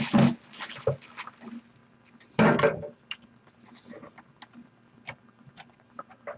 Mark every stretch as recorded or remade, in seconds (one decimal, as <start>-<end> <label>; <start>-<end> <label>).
0.0-6.4 recorded